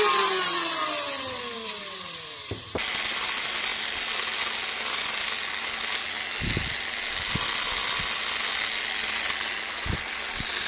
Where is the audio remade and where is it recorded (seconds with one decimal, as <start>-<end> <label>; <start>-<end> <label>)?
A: 0.0-10.7 recorded